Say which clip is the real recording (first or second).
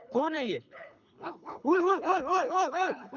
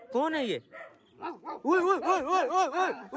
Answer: second